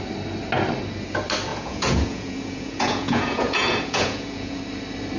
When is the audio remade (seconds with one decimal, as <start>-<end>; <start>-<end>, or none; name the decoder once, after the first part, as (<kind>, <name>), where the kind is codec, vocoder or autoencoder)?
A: 1.5-4.6 (vocoder, Vocos)